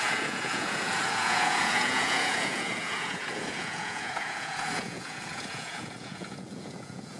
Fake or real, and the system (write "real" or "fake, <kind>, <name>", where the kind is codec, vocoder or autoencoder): fake, vocoder, Vocos